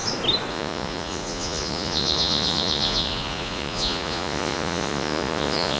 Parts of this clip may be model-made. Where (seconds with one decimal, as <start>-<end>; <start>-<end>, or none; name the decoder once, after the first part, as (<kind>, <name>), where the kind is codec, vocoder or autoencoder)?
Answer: 0.5-5.8 (vocoder, Vocos)